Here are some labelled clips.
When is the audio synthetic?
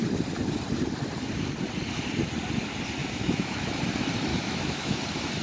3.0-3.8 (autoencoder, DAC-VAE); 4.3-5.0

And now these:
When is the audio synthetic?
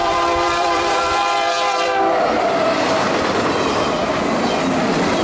0.0-3.1 (vocoder, BigVGAN v2)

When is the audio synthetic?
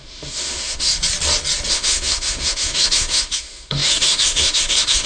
0.0-0.9 (autoencoder, DAC-VAE); 1.7-5.1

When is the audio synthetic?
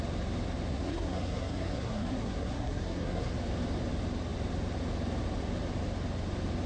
0.7-3.3 (codec, SNAC)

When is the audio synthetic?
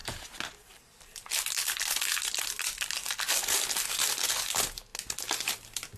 none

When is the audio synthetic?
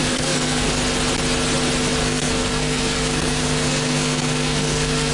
0.0-0.7 (codec, SNAC); 2.0-5.1